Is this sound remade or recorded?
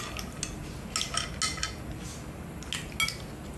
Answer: recorded